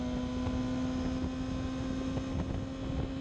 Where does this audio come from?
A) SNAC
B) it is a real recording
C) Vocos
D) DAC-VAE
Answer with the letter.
B